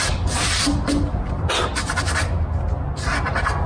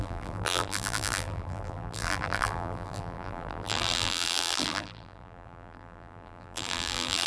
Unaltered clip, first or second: first